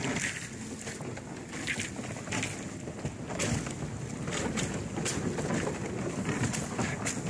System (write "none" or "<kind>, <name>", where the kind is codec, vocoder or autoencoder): none